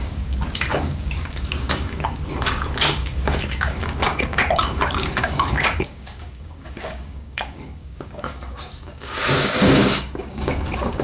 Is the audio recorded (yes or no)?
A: no